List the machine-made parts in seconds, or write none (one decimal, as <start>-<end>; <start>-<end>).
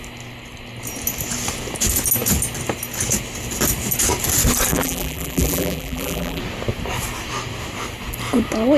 4.7-6.4